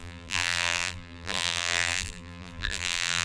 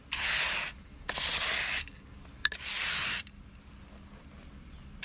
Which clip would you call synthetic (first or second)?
first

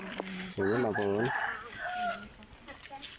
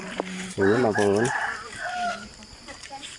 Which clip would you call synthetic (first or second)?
second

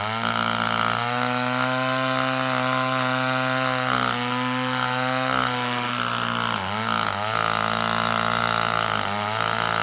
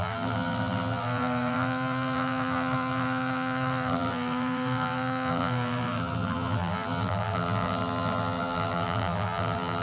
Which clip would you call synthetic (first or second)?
second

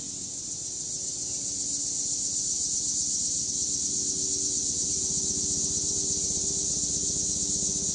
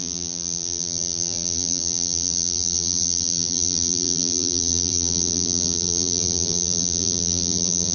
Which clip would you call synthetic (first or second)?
second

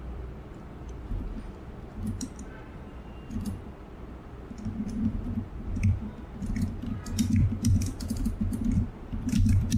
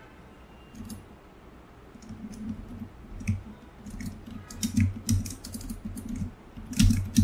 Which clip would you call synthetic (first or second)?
first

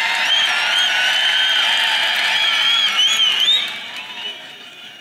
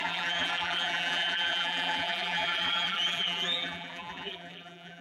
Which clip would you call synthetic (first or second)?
second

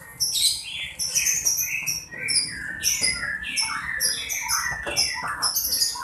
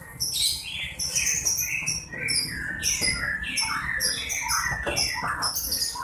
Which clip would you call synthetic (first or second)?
second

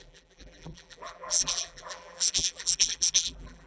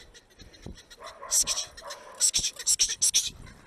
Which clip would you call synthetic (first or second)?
first